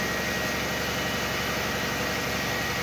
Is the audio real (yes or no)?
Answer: yes